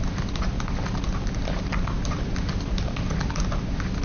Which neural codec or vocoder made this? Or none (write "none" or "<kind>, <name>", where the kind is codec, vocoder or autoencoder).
none